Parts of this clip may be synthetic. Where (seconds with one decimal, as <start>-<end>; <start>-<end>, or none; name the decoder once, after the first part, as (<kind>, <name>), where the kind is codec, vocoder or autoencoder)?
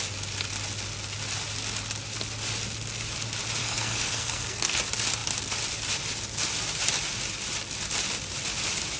3.6-4.8 (codec, SNAC)